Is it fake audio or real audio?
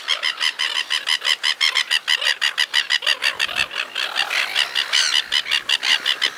real